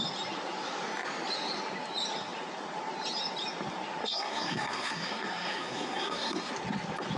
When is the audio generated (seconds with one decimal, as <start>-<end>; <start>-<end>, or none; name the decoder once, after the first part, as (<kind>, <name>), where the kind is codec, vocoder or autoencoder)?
4.0-6.5 (codec, SNAC)